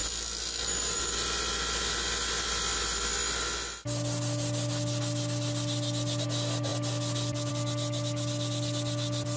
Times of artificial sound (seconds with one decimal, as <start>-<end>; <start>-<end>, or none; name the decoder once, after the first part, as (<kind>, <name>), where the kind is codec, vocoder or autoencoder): none